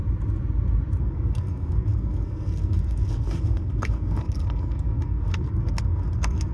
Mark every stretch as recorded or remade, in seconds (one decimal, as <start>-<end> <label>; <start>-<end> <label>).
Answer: 0.0-1.0 recorded; 1.0-6.5 remade